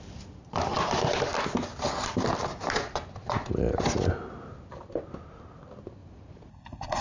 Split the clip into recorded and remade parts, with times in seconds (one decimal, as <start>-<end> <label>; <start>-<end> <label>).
0.0-6.0 recorded; 6.0-7.0 remade